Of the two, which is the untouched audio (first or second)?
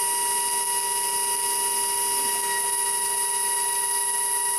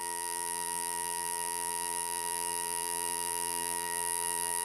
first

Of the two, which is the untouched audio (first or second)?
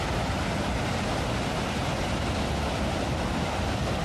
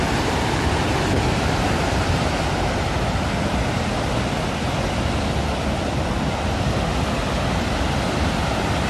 second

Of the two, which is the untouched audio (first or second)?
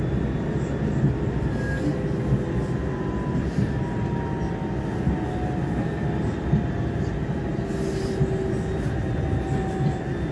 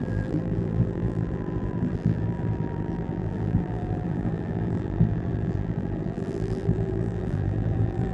first